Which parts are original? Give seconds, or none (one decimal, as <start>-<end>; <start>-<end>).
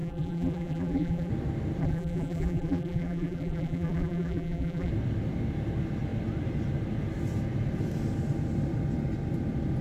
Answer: 1.3-1.8; 4.9-9.8